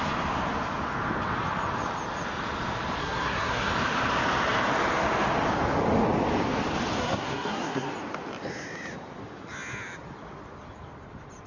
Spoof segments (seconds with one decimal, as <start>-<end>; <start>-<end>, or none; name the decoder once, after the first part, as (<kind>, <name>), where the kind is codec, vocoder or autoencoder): 3.0-3.7 (codec, SNAC); 7.0-7.9